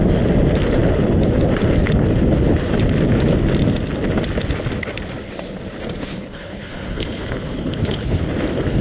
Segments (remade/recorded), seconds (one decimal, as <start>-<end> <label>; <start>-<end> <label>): 0.0-6.1 recorded; 6.1-8.2 remade; 8.2-8.8 recorded